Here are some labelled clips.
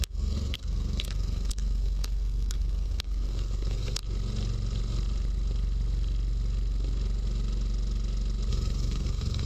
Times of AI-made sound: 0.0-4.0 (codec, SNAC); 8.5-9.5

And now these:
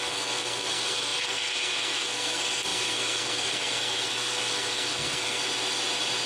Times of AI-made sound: 0.0-5.4 (codec, SNAC)

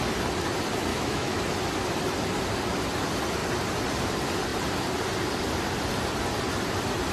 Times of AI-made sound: 0.9-1.4 (autoencoder, DAC-VAE)